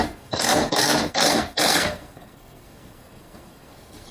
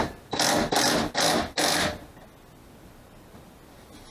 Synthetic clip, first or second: first